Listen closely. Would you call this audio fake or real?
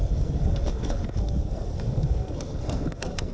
fake